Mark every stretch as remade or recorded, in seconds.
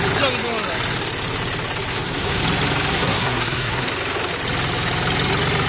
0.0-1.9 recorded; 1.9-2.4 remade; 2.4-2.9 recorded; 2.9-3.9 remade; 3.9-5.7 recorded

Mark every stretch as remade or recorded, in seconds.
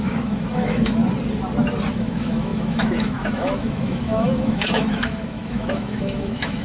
0.0-1.0 remade; 1.0-1.9 recorded; 1.9-6.6 remade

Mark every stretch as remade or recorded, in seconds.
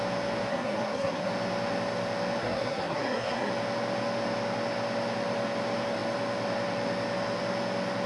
0.0-0.5 recorded; 0.5-1.3 remade; 1.3-2.4 recorded; 2.4-3.5 remade; 3.5-8.1 recorded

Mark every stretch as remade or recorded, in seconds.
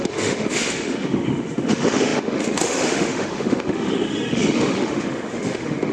0.0-5.9 remade